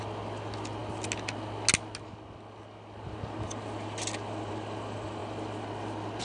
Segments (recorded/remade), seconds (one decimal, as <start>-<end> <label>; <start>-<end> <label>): 0.0-6.2 recorded